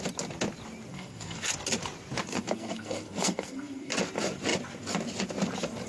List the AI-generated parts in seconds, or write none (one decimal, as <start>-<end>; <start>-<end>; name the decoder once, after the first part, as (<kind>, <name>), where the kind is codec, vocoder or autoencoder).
0.9-1.5 (codec, SNAC); 2.2-3.9